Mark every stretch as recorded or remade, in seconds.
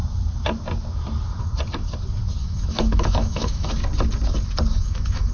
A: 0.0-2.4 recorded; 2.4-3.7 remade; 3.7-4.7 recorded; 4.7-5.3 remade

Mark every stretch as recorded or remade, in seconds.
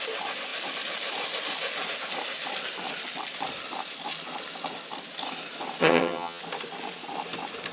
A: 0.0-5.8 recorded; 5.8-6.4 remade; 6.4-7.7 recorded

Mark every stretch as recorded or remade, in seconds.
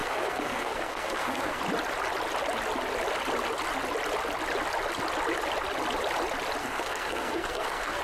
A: 0.0-1.6 remade; 1.6-6.6 recorded; 6.6-8.0 remade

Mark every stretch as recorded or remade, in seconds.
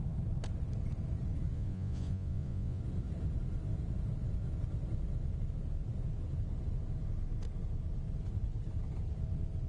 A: 0.0-1.5 recorded; 1.5-2.8 remade; 2.8-9.7 recorded